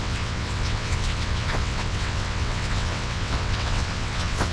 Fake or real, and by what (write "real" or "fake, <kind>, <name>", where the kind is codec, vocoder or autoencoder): fake, vocoder, WaveNeXt